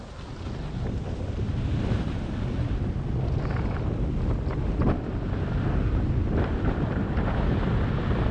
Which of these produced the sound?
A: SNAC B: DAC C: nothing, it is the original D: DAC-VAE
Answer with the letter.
C